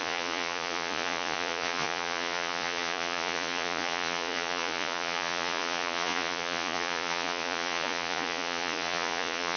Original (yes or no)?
no